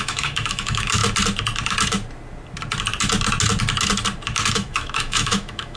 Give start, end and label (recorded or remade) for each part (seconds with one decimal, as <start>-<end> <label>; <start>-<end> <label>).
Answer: 0.0-1.0 remade; 1.0-4.5 recorded; 4.5-5.8 remade